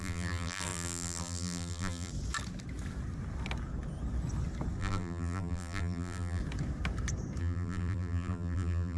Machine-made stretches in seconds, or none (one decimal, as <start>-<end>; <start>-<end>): 0.0-2.1; 4.8-6.4; 7.4-9.0